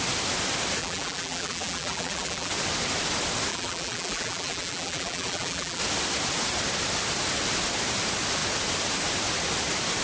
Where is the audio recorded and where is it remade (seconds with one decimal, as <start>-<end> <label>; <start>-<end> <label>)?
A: 0.0-0.8 recorded; 0.8-2.5 remade; 2.5-3.5 recorded; 3.5-5.8 remade; 5.8-10.0 recorded